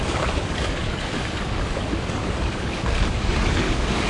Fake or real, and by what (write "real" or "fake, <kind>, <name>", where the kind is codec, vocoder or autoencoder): fake, codec, DAC